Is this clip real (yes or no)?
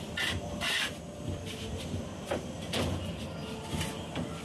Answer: no